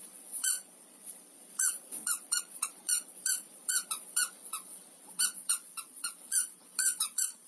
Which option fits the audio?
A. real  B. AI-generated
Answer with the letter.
B